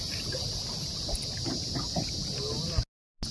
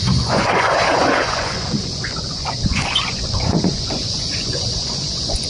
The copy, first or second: second